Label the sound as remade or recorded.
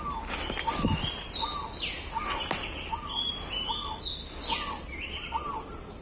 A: recorded